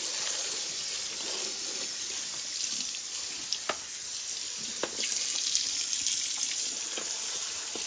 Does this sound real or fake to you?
real